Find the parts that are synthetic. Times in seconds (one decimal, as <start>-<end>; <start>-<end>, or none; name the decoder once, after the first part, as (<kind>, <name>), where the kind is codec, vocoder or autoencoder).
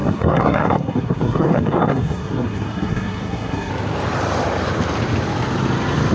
0.0-3.7 (codec, SNAC)